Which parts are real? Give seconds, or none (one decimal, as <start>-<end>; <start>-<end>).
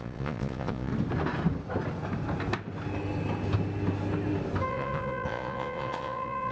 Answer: 0.9-4.7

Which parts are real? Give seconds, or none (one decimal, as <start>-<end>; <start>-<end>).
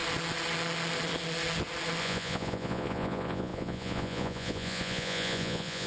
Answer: 0.0-2.0